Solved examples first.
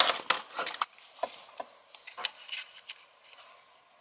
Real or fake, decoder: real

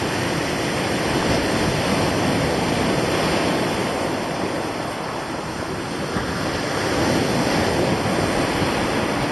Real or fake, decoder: real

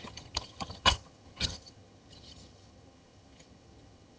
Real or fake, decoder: fake, vocoder, HiFi-GAN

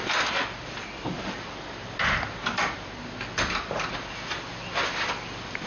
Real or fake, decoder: real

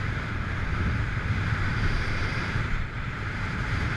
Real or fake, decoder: fake, vocoder, BigVGAN v2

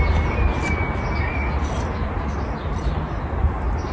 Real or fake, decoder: real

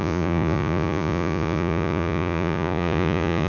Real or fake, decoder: fake, vocoder, Vocos